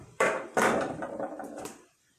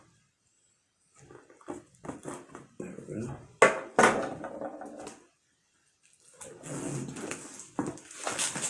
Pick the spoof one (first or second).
first